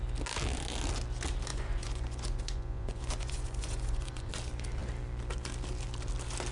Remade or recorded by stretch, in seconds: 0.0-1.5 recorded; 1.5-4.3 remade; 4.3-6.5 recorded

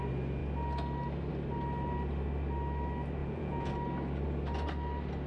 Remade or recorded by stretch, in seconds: 0.0-3.2 recorded; 3.2-3.7 remade; 3.7-5.3 recorded

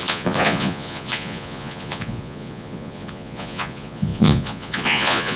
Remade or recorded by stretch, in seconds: 0.0-5.4 remade

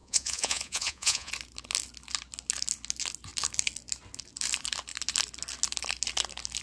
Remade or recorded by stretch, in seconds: 0.0-1.3 remade; 1.3-6.6 recorded